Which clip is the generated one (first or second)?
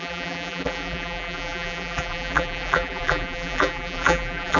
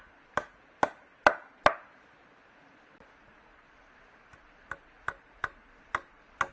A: first